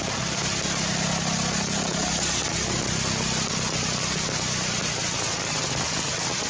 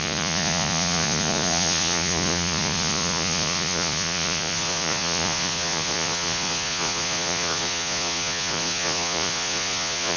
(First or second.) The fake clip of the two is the second